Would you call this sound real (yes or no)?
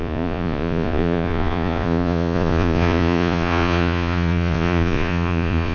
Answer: no